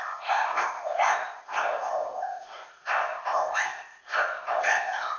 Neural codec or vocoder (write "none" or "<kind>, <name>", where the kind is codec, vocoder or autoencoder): codec, ZipCodec